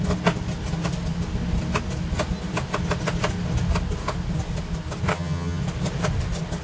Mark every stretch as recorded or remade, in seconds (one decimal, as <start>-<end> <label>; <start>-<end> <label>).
0.0-5.1 recorded; 5.1-5.6 remade; 5.6-6.6 recorded